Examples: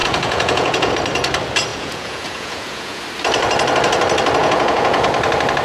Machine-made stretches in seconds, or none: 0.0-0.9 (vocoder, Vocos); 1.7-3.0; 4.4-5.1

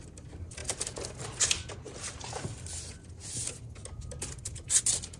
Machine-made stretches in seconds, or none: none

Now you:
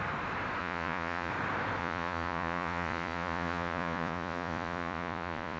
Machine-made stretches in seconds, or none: 0.6-1.3 (vocoder, Vocos); 1.8-5.6

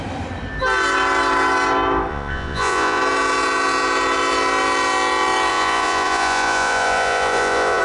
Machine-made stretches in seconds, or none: 2.1-3.0 (vocoder, Vocos); 5.5-7.8

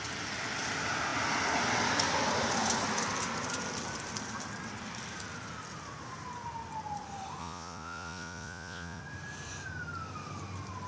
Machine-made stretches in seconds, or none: 7.4-9.0 (vocoder, Vocos)

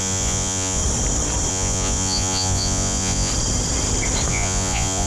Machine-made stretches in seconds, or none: 0.0-0.8 (vocoder, Vocos); 1.5-3.3; 4.3-5.1

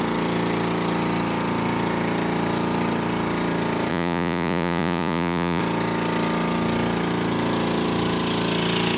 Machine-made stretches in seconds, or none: 3.9-5.6 (vocoder, Vocos)

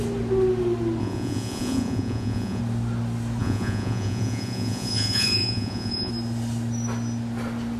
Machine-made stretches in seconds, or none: 1.0-2.6 (vocoder, Vocos); 3.4-6.1